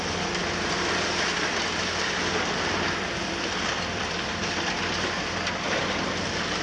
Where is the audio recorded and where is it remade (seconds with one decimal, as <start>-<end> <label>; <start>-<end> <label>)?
0.0-6.6 remade